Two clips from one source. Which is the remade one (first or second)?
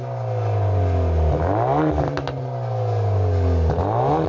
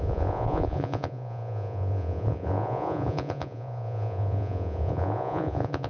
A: second